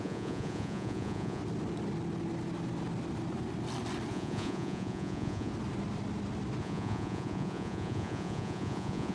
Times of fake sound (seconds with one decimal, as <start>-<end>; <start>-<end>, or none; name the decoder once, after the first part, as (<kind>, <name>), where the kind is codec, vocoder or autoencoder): 0.0-1.4 (vocoder, Vocos); 4.1-5.5; 6.6-9.1